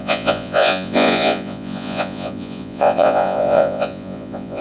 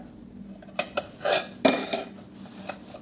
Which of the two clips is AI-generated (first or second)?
first